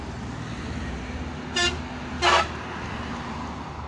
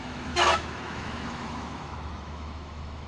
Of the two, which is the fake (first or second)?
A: second